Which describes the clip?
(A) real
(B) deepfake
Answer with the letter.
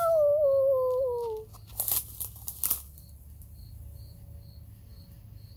A